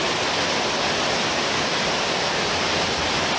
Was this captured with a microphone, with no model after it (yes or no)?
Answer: yes